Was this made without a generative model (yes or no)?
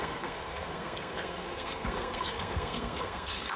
no